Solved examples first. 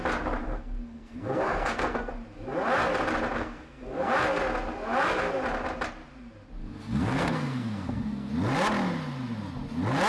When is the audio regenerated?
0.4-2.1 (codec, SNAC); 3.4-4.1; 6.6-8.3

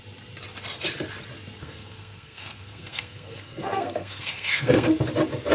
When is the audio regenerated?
1.6-4.9 (codec, SNAC)